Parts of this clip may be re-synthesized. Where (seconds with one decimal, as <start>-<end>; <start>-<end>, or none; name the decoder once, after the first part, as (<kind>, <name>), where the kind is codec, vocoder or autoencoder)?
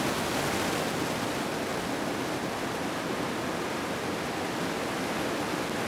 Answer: none